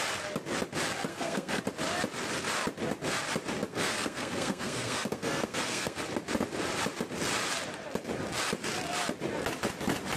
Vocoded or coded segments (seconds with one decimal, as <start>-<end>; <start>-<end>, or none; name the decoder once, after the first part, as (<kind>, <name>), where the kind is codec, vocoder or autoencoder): 1.1-1.6 (codec, SNAC); 3.7-6.0